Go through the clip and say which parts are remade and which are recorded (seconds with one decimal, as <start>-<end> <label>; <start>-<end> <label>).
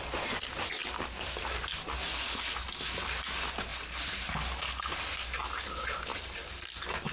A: 0.0-7.1 recorded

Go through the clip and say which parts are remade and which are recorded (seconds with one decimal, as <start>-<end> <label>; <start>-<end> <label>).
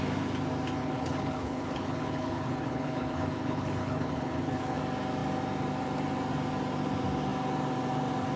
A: 0.0-0.8 recorded; 0.8-4.8 remade; 4.8-8.4 recorded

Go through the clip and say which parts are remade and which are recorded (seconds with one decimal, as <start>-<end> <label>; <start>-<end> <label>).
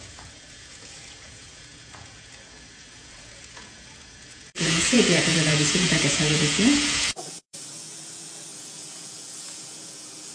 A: 0.0-10.3 remade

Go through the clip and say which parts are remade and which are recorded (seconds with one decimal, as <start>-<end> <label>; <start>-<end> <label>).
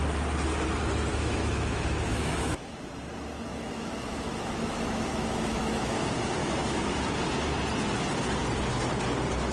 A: 0.0-1.1 recorded; 1.1-2.8 remade; 2.8-3.5 recorded; 3.5-6.0 remade; 6.0-6.4 recorded; 6.4-7.0 remade; 7.0-9.5 recorded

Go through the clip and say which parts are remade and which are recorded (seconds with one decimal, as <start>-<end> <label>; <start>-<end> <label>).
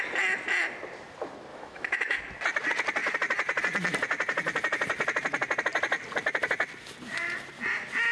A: 0.0-1.5 recorded; 1.5-2.2 remade; 2.2-8.1 recorded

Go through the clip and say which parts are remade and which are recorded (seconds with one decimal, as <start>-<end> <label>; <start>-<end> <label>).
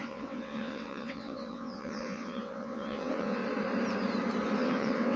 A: 0.0-3.4 remade; 3.4-4.6 recorded; 4.6-5.2 remade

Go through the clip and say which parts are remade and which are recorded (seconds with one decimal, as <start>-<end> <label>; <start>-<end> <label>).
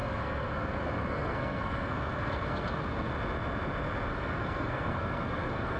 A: 0.0-3.1 remade; 3.1-4.1 recorded; 4.1-5.8 remade